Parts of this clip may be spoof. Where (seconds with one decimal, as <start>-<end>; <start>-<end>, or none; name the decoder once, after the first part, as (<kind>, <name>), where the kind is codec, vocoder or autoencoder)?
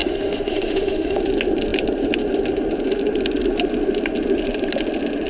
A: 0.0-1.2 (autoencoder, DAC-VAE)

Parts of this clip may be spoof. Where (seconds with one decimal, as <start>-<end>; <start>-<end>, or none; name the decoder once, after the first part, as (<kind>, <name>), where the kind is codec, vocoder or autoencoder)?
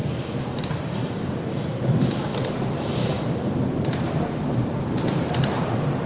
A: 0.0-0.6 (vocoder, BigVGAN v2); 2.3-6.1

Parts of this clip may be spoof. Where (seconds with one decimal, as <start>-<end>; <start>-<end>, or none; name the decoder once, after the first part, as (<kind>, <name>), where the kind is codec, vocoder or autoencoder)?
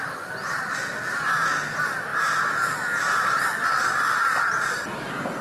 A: none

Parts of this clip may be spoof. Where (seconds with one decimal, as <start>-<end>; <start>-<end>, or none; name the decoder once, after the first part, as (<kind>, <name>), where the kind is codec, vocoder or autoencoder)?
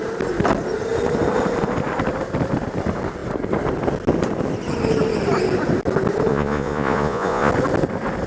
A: 6.3-7.5 (vocoder, Vocos)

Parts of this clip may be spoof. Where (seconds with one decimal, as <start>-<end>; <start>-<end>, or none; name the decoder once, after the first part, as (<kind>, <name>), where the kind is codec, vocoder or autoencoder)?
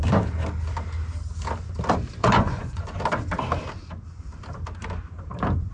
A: 2.2-3.0 (vocoder, Vocos)